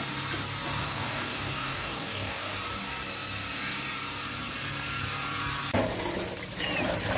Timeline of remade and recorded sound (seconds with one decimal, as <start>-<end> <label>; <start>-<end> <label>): 0.0-0.8 recorded; 0.8-2.6 remade; 2.6-7.2 recorded